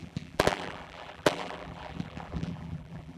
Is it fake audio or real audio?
fake